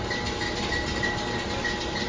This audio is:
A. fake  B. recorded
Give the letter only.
B